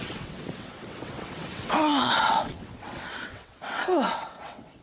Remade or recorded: remade